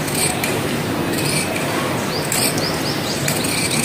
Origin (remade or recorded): recorded